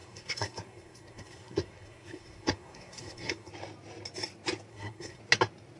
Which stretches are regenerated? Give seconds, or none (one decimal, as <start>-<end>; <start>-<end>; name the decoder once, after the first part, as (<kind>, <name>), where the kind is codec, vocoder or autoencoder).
0.0-3.5 (codec, SNAC); 4.7-5.2